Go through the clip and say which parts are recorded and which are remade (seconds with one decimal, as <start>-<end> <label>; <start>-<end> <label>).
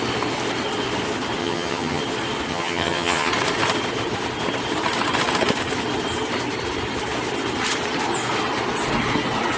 0.0-1.4 recorded; 1.4-2.0 remade; 2.0-2.5 recorded; 2.5-3.3 remade; 3.3-9.6 recorded